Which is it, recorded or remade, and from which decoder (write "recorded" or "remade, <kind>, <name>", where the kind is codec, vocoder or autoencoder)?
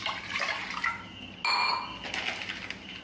recorded